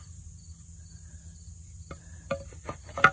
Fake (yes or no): no